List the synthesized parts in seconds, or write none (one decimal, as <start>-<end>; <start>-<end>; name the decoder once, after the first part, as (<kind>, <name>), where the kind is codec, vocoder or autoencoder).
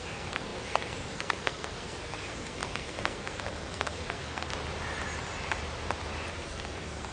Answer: 0.0-4.5 (codec, SNAC); 6.3-7.1